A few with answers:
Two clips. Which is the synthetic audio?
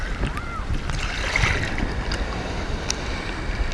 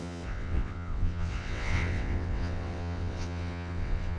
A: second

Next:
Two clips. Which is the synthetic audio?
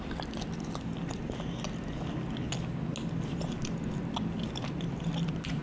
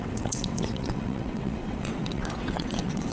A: second